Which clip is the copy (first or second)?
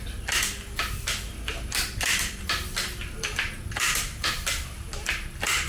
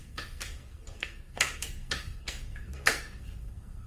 second